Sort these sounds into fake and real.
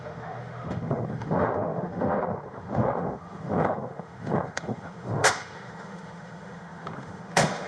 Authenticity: fake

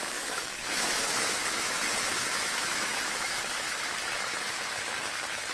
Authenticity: fake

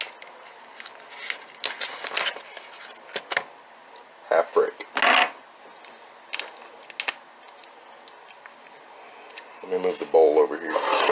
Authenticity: real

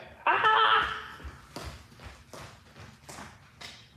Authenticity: real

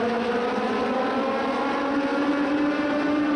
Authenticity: real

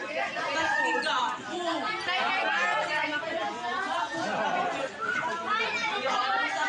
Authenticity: real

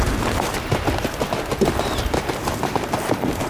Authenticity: real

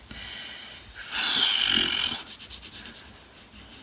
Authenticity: real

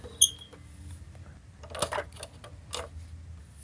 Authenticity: real